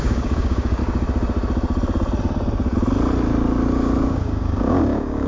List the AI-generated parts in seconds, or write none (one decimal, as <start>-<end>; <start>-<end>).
0.0-0.8; 4.0-5.3